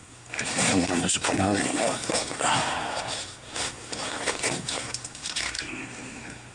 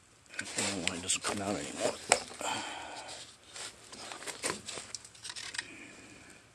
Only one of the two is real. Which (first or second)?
second